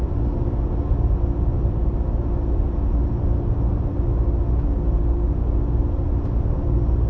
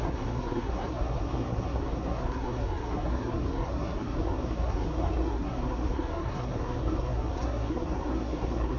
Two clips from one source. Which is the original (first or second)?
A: first